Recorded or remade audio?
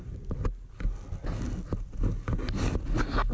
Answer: recorded